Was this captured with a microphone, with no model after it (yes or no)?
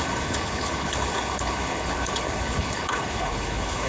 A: no